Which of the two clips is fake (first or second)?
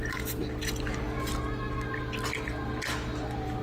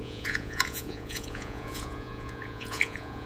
second